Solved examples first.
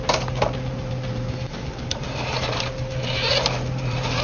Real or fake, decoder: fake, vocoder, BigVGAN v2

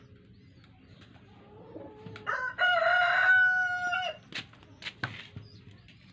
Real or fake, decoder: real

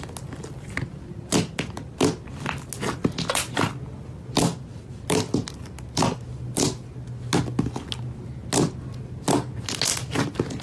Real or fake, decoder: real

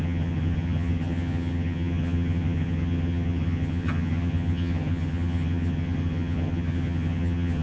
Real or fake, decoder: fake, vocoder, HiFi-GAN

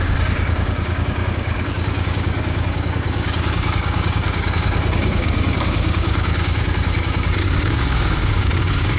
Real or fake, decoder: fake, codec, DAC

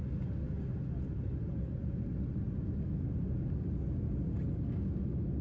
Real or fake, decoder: real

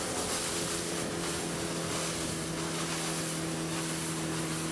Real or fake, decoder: real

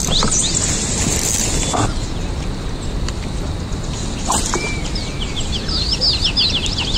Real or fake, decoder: real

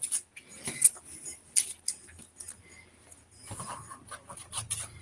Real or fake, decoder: real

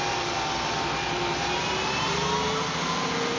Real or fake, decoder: real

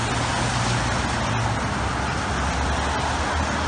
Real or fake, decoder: real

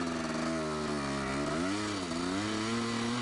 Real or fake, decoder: real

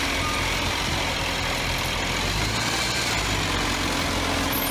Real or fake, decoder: real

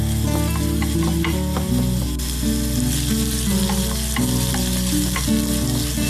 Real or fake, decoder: real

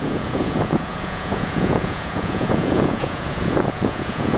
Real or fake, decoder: fake, vocoder, Vocos